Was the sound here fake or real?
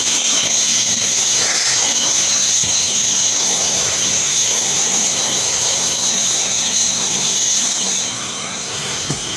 fake